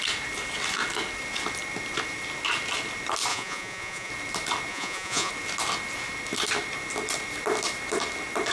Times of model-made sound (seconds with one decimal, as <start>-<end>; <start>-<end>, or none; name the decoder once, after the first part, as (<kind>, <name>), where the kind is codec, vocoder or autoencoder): 3.3-4.1 (vocoder, Vocos); 4.7-5.3